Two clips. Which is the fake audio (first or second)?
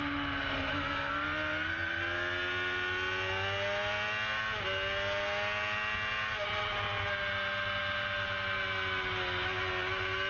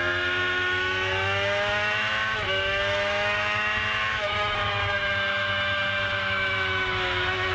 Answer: second